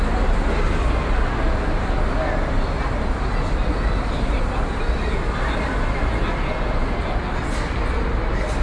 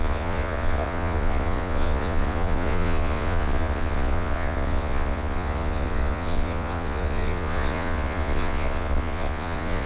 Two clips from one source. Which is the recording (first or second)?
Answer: first